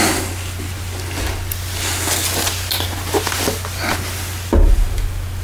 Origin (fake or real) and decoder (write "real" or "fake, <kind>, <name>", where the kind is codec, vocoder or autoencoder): real